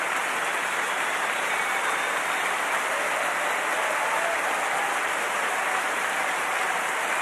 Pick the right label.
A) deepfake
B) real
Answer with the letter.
B